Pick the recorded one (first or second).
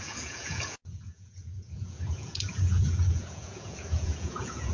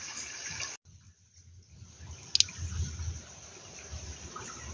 second